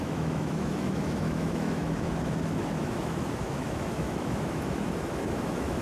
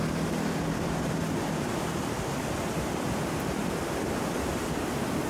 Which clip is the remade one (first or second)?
first